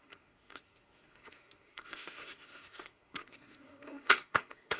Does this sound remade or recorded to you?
remade